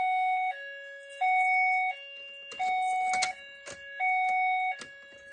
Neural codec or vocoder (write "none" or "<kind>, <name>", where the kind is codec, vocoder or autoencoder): none